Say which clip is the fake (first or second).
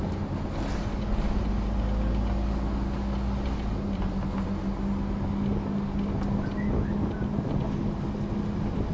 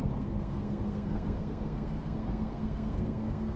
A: second